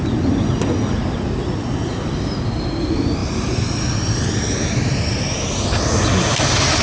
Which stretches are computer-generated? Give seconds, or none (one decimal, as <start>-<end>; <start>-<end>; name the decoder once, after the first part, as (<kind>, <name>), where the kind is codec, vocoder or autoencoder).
none